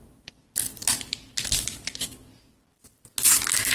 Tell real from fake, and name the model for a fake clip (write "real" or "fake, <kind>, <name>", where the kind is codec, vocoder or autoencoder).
real